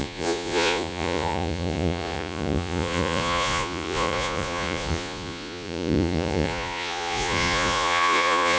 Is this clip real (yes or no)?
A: no